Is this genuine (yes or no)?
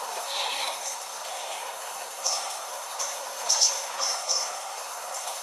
no